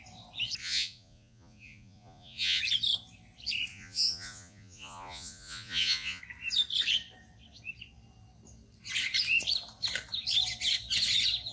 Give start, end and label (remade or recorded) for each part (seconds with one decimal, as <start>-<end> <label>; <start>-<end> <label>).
0.0-0.6 recorded; 0.6-2.6 remade; 2.6-3.7 recorded; 3.7-6.2 remade; 6.2-11.5 recorded